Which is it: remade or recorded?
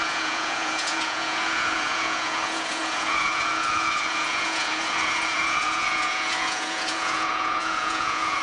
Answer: remade